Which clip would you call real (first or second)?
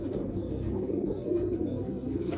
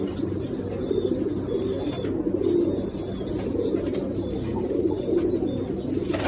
second